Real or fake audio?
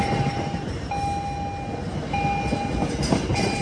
real